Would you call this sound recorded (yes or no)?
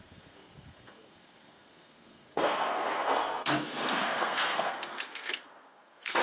no